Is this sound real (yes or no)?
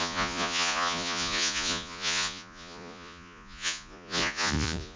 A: no